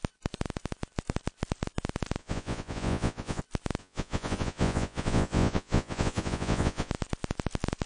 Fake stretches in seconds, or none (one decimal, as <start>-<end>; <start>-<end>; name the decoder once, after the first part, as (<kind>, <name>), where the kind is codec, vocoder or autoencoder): 2.2-3.4 (vocoder, Vocos); 3.8-6.9